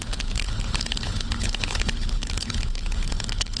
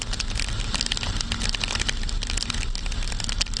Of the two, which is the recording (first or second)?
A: second